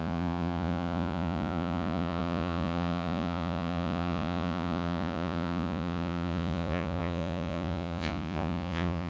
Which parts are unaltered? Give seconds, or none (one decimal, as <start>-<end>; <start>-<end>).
none